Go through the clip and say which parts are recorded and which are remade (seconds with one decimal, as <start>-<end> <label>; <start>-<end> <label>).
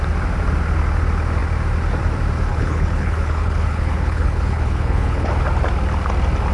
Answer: 0.0-2.5 recorded; 2.5-5.3 remade; 5.3-6.5 recorded